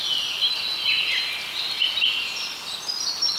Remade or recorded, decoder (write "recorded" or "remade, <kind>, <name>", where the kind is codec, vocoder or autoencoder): recorded